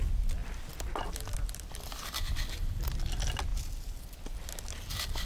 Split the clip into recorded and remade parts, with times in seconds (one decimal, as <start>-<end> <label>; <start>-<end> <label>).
0.0-0.4 recorded; 0.4-2.5 remade; 2.5-3.5 recorded; 3.5-5.3 remade